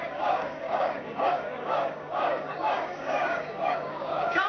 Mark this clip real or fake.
fake